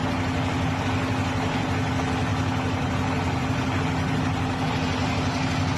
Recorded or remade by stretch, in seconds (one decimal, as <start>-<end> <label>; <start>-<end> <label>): 0.0-5.8 recorded